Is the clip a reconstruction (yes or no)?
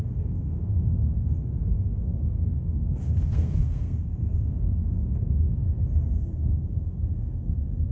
yes